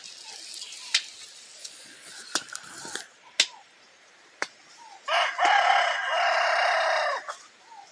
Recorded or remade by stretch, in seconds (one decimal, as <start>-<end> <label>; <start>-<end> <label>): 0.0-1.6 recorded; 1.6-2.2 remade; 2.2-7.9 recorded